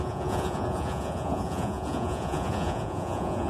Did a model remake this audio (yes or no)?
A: yes